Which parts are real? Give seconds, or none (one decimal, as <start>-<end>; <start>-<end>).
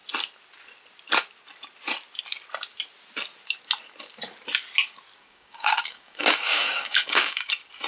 0.0-5.2; 7.5-7.9